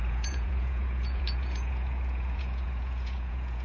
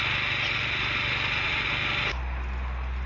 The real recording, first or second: second